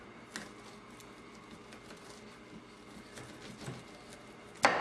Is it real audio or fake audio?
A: real